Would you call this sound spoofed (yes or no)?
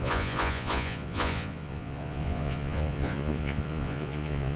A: yes